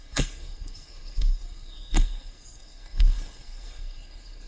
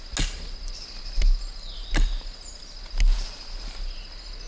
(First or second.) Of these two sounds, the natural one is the second